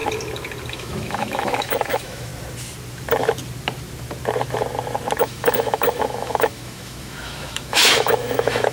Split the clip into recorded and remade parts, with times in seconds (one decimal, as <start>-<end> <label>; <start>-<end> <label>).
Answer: 0.0-0.7 recorded; 0.7-2.3 remade; 2.3-5.2 recorded; 5.2-8.7 remade